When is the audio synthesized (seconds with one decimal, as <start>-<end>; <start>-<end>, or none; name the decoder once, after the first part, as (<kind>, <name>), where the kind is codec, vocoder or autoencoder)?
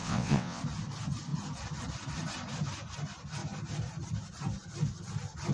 0.0-0.6 (vocoder, WaveNeXt)